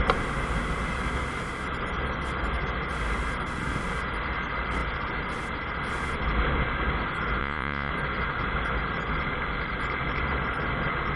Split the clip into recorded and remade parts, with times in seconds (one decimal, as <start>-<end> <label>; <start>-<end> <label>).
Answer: 0.0-7.4 recorded; 7.4-7.9 remade; 7.9-11.2 recorded